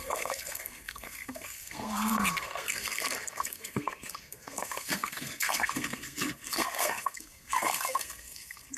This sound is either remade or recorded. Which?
remade